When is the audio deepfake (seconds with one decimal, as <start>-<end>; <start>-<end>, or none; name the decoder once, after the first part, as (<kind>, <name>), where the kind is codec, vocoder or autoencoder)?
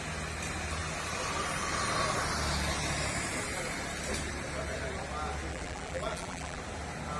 5.5-6.6 (vocoder, BigVGAN v2)